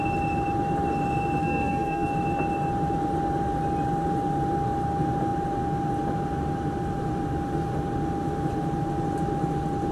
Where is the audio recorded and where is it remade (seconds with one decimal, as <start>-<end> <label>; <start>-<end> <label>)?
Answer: 0.0-1.4 recorded; 1.4-2.1 remade; 2.1-9.9 recorded